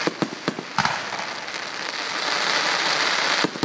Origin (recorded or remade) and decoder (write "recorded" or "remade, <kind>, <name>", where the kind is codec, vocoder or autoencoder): recorded